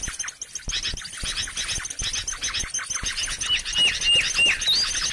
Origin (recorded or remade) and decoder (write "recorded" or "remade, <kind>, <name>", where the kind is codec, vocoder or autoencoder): recorded